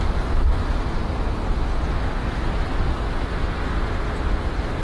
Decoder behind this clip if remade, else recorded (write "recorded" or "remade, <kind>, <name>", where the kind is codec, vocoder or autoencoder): recorded